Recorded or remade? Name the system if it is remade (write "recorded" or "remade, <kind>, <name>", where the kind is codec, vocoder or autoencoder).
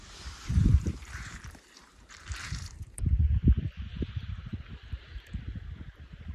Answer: remade, vocoder, BigVGAN v2